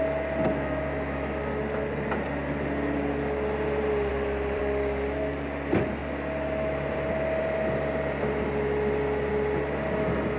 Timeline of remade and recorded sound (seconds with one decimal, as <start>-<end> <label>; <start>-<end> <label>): 0.0-4.1 recorded; 4.1-4.6 remade; 4.6-6.0 recorded; 6.0-9.3 remade; 9.3-10.4 recorded